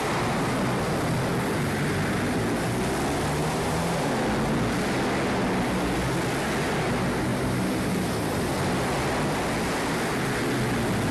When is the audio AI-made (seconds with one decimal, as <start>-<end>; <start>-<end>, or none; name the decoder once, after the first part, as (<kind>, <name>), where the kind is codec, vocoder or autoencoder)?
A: 3.4-4.1 (vocoder, BigVGAN v2); 7.3-8.5